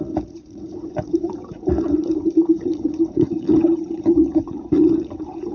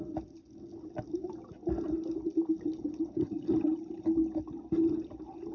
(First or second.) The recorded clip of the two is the second